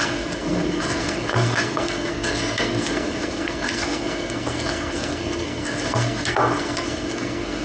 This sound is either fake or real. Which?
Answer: fake